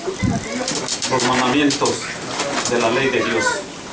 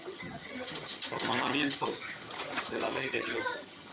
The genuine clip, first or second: first